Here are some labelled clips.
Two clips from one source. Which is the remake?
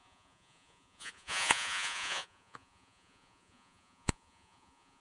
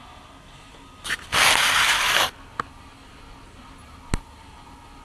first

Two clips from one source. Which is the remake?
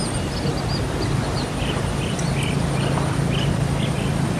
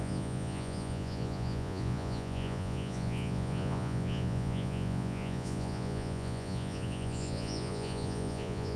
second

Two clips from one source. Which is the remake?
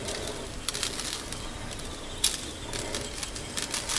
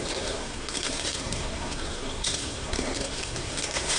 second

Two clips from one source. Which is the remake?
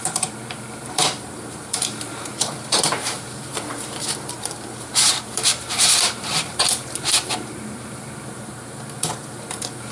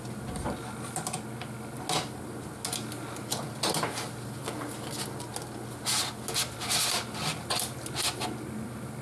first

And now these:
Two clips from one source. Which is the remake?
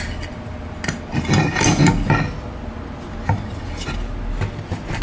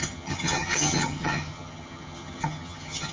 second